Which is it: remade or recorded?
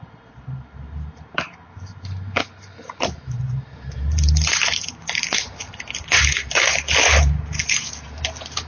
remade